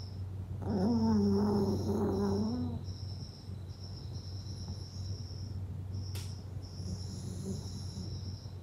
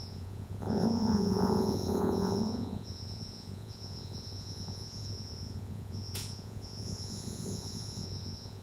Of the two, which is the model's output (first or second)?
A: second